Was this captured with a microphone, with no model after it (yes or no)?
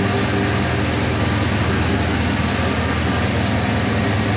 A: yes